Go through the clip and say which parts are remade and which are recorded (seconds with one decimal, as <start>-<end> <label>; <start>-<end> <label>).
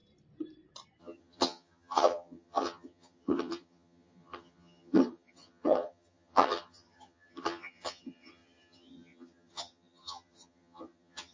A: 0.0-1.0 recorded; 1.0-11.3 remade